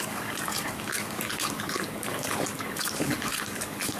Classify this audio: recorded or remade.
remade